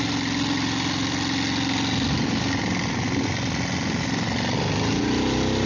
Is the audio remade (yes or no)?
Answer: no